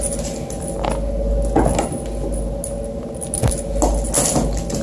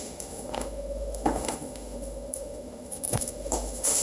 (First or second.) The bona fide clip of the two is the first